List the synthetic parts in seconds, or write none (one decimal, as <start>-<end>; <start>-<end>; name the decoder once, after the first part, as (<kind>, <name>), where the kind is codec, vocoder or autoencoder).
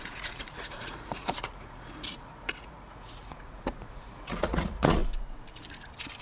0.0-5.0 (vocoder, Vocos)